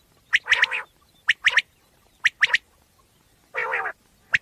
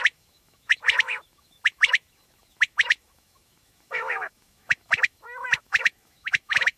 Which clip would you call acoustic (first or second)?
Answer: first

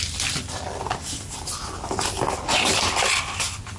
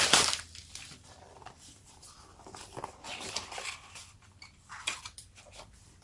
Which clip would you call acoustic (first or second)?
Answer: first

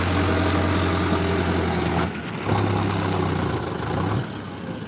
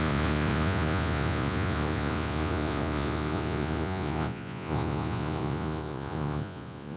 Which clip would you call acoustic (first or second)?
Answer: first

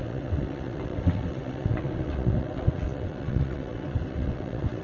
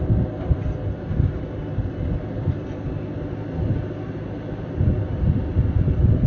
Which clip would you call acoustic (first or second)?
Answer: second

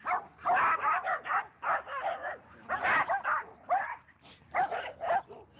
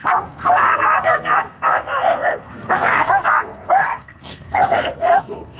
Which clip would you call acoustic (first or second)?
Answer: first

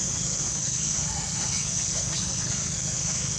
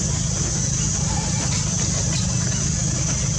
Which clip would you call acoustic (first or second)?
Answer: second